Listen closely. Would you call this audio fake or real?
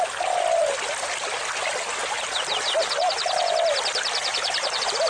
real